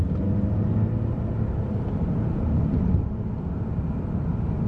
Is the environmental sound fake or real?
real